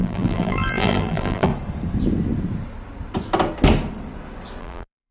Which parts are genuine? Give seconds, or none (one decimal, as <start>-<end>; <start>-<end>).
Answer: 1.5-4.6